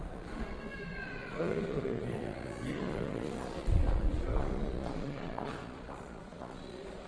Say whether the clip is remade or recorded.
remade